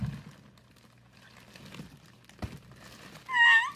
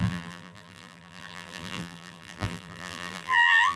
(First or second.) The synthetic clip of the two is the second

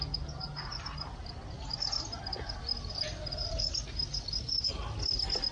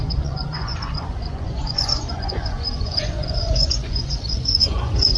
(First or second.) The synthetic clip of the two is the second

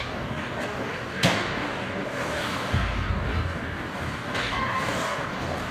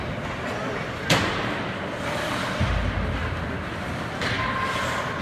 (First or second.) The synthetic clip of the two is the first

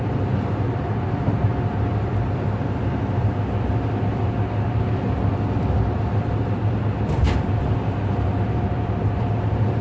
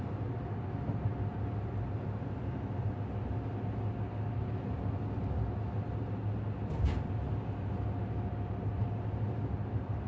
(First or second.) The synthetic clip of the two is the first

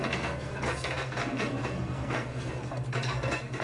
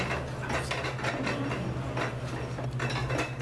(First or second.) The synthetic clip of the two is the first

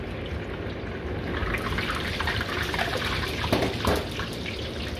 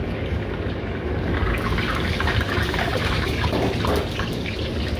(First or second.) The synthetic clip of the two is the second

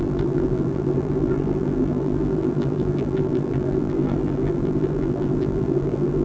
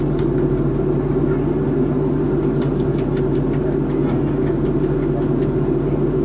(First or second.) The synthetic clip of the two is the first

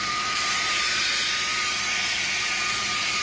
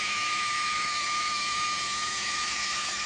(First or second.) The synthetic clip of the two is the second